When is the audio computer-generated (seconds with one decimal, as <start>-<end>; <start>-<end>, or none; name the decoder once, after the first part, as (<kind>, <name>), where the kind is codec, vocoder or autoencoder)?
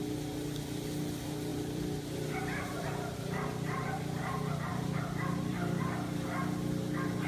1.5-4.2 (vocoder, BigVGAN v2); 4.7-5.8